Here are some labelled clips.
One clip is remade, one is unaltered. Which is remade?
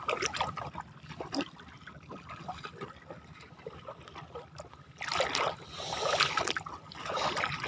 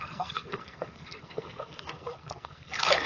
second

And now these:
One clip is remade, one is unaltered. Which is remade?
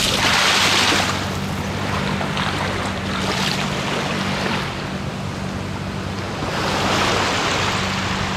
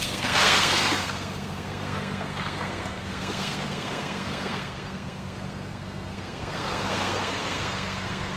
second